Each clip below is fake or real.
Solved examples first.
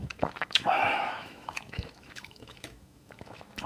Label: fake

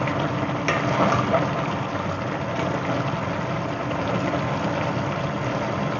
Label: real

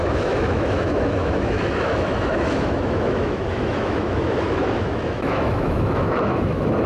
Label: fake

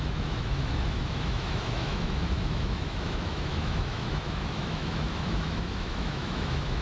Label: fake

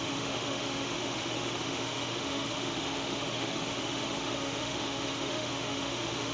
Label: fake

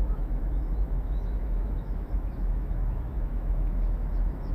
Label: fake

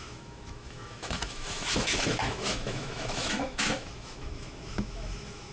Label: fake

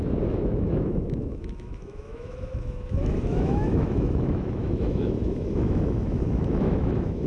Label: fake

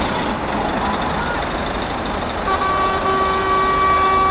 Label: real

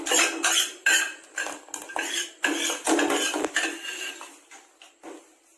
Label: real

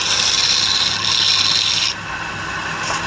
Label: real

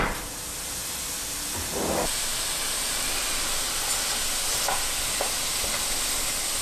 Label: real